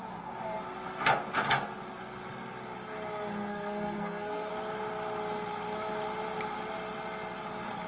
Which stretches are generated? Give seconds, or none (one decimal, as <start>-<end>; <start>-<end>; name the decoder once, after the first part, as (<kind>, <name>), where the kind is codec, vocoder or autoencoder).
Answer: 3.5-4.5 (codec, SNAC)